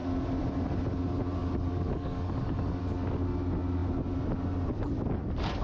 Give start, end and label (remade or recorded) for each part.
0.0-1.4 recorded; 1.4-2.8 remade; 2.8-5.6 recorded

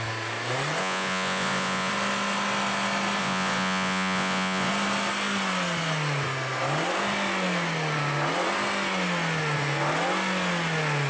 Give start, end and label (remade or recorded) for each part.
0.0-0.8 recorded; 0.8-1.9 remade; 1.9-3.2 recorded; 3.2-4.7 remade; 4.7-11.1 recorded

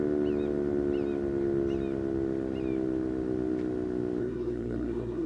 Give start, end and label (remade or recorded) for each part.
0.0-4.2 recorded; 4.2-5.3 remade